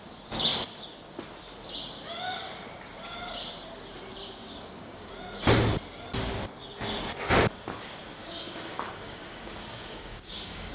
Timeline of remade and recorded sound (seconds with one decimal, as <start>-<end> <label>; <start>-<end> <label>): 0.0-4.4 recorded; 4.4-5.1 remade; 5.1-8.2 recorded; 8.2-10.7 remade